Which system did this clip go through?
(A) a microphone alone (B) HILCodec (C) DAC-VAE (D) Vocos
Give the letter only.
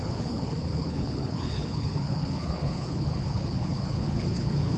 B